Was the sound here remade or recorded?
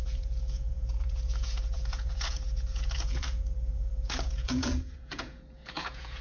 remade